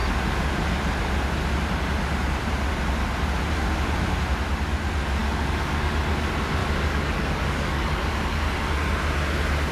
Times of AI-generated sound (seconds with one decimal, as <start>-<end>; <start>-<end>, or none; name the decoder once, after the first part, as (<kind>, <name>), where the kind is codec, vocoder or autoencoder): 5.2-5.9 (codec, DAC); 6.6-8.4